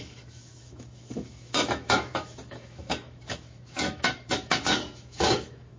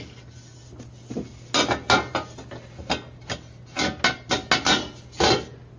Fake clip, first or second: first